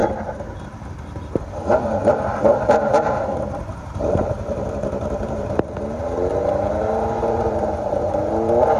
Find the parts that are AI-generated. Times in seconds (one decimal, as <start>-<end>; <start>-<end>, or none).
0.0-1.4; 2.0-5.8; 6.3-8.3